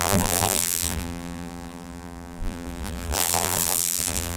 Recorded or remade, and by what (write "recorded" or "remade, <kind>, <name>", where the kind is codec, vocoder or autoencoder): remade, vocoder, BigVGAN v2